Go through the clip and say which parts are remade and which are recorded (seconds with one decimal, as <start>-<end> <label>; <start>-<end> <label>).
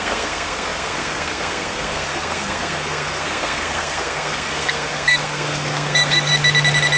0.0-6.3 remade; 6.3-7.0 recorded